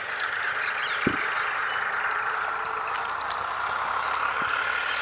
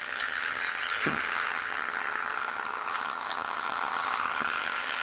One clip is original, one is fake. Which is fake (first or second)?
second